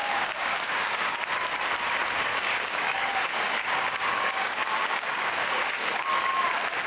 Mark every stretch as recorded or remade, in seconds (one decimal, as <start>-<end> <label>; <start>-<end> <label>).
0.0-1.1 remade; 1.1-2.3 recorded; 2.3-6.4 remade; 6.4-6.9 recorded